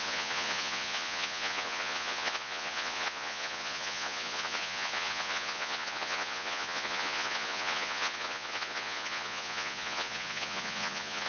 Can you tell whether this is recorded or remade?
remade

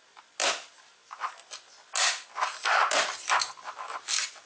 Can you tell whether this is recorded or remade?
recorded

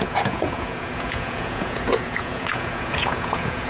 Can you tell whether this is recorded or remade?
remade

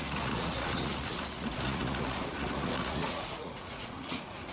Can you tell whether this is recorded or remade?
remade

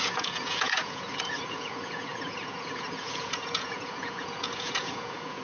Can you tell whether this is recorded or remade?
remade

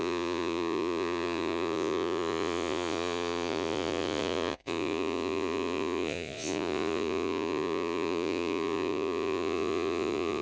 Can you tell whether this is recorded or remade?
remade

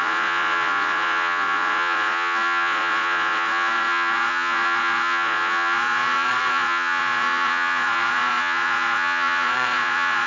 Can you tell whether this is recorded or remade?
remade